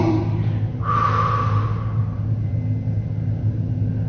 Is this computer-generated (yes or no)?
no